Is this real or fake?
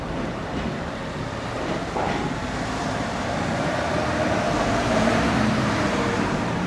fake